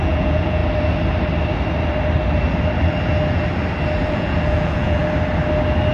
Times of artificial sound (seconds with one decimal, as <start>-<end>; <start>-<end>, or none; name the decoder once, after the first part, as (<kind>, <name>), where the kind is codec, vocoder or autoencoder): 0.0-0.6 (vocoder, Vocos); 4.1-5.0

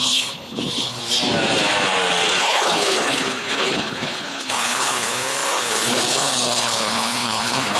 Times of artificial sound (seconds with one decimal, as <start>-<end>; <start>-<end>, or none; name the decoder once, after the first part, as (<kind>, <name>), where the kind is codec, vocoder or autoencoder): 0.0-1.0 (codec, HILCodec); 2.4-7.8

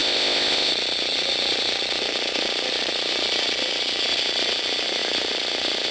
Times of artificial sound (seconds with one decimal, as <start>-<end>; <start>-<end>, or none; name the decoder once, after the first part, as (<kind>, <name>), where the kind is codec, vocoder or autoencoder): 0.0-0.7 (codec, ZipCodec)

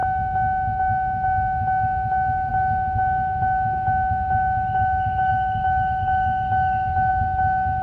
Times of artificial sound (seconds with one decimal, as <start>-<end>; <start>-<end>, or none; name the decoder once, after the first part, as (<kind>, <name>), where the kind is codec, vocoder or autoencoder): none

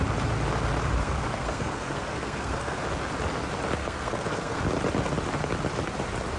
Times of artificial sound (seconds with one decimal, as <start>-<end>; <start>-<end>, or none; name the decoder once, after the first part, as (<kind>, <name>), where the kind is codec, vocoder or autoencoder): 1.0-2.8 (codec, SNAC); 3.8-4.6

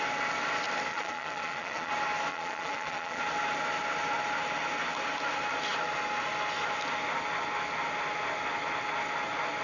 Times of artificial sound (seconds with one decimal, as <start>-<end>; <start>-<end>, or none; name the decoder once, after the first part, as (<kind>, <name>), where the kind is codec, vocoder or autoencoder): 0.9-1.9 (vocoder, Vocos); 2.3-3.2